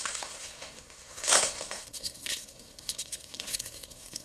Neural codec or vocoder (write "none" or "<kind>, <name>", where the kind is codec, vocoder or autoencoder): codec, SNAC